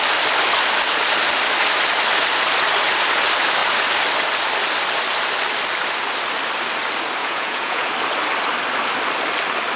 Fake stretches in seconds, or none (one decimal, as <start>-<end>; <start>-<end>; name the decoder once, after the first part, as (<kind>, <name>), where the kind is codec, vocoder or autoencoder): 7.2-7.9 (vocoder, Vocos)